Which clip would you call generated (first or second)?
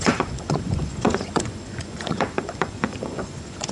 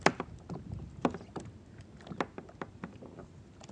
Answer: first